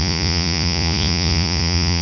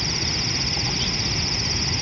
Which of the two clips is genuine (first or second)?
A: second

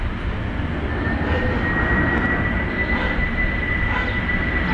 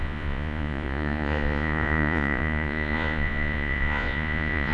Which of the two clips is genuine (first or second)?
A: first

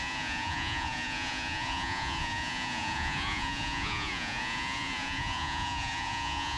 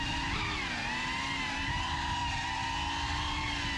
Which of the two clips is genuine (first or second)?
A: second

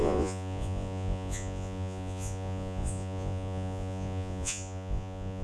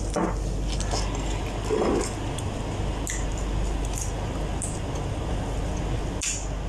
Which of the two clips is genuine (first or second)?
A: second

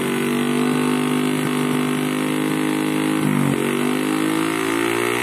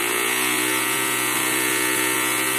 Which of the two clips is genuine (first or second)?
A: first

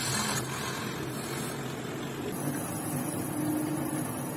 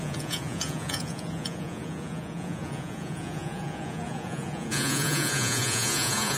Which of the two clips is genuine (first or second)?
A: first